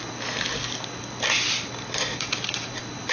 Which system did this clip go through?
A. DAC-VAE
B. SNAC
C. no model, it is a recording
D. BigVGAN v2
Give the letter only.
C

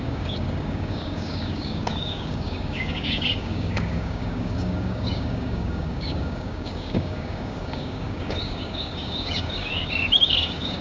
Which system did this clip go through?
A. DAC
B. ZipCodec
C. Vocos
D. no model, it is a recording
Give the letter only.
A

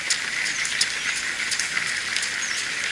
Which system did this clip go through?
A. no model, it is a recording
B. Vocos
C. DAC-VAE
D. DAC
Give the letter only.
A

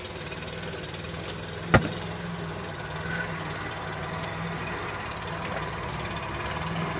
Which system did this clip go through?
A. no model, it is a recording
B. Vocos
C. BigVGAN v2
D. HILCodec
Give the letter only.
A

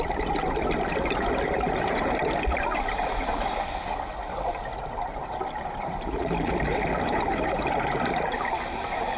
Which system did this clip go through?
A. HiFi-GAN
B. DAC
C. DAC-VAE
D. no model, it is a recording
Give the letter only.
D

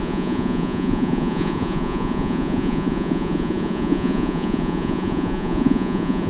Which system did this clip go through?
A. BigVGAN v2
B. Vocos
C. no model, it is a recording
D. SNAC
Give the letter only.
B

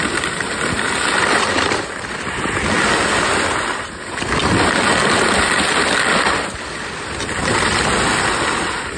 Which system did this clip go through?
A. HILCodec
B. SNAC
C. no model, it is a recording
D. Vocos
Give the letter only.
C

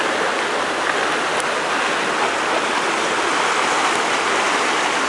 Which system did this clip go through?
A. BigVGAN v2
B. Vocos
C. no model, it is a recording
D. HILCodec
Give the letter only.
C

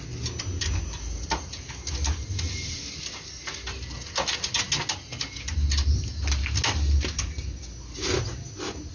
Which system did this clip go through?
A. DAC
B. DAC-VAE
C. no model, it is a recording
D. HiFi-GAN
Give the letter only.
C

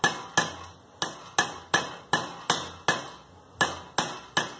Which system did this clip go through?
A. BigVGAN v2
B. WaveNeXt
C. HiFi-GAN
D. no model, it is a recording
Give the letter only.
D